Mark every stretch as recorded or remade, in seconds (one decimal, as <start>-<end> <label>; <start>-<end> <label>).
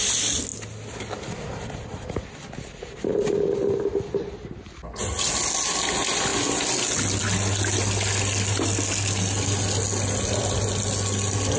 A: 0.0-11.6 recorded